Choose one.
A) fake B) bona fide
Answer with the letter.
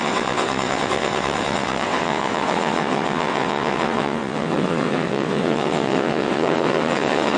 A